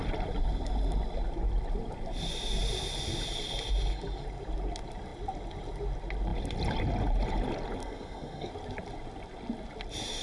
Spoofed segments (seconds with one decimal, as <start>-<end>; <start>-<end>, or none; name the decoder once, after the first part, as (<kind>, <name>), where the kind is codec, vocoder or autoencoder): 7.8-8.5 (codec, SNAC)